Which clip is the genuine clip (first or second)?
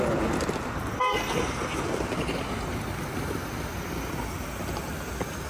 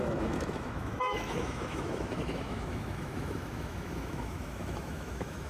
first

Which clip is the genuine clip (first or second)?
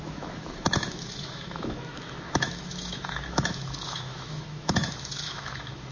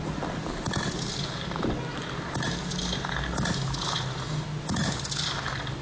second